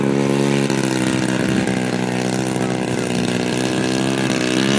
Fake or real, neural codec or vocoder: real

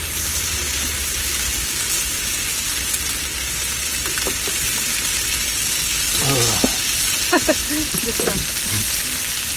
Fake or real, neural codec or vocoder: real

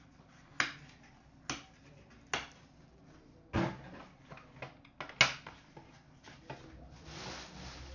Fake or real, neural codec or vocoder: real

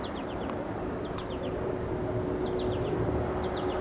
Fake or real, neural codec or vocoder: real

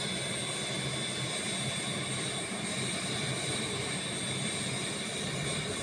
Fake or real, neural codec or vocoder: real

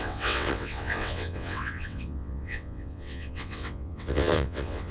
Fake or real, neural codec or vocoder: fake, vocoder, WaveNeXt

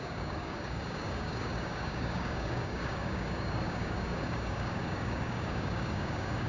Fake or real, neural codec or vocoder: fake, codec, DAC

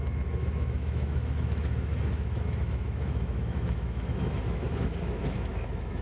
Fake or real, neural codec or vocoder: fake, autoencoder, DAC-VAE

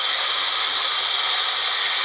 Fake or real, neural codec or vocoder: real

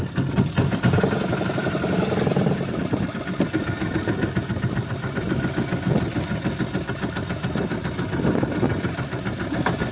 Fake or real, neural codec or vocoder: real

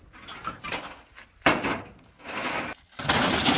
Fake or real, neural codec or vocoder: real